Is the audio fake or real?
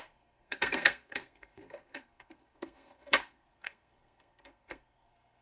fake